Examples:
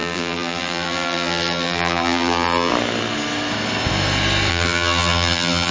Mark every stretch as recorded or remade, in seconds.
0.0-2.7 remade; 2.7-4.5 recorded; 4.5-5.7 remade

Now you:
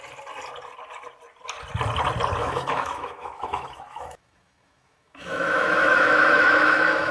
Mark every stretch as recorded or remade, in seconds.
0.0-2.4 recorded; 2.4-7.1 remade

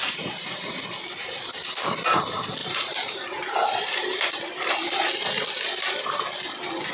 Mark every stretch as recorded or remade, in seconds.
0.0-0.7 remade; 0.7-2.6 recorded; 2.6-5.1 remade; 5.1-6.9 recorded